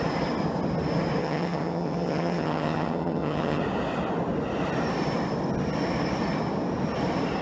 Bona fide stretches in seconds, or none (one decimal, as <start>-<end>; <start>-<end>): 0.0-1.2; 3.6-7.4

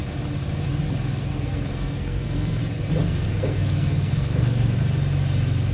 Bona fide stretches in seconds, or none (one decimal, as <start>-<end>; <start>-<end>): 0.0-1.3; 2.6-3.0; 4.8-5.7

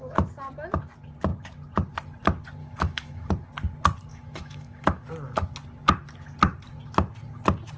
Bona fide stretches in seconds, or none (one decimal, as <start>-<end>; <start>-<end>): 0.0-2.6; 3.3-4.1; 5.0-7.8

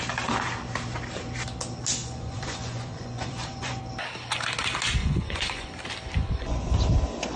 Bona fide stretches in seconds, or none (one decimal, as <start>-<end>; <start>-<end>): 0.0-2.0; 3.8-5.0; 5.7-6.2; 6.8-7.4

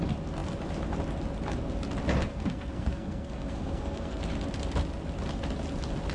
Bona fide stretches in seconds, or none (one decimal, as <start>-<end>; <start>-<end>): 0.0-2.3; 4.2-6.1